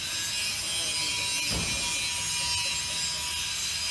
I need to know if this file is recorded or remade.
recorded